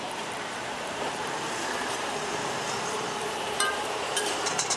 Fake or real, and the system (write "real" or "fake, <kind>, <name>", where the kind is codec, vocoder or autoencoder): fake, vocoder, BigVGAN v2